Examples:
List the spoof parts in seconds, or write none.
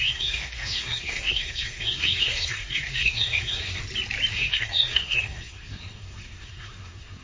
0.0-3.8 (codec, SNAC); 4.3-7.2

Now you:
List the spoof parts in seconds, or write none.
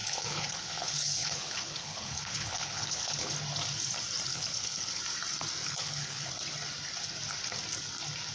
0.0-3.3 (codec, HILCodec); 4.3-5.0; 5.6-6.3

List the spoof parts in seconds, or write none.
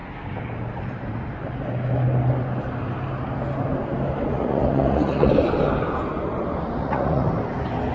4.3-5.3 (vocoder, Vocos); 6.8-7.3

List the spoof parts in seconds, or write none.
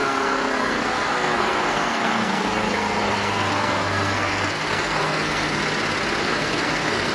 0.0-5.6 (codec, SNAC); 6.2-7.1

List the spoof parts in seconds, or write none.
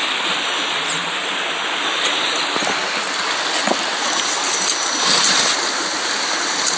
none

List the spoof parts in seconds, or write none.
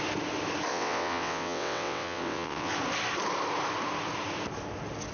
0.7-2.7 (vocoder, WaveNeXt)